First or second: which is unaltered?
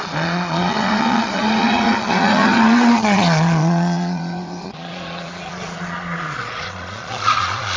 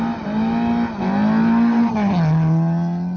second